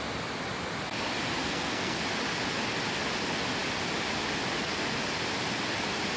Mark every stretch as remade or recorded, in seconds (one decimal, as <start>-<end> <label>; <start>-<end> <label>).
0.0-1.4 recorded; 1.4-2.0 remade; 2.0-6.2 recorded